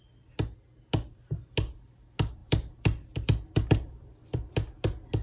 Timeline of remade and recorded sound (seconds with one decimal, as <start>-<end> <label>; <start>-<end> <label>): 0.0-2.4 recorded; 2.4-4.5 remade; 4.5-5.2 recorded